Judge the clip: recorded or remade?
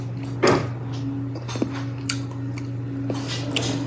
recorded